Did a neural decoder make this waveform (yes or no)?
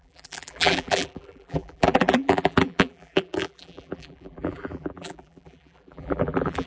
yes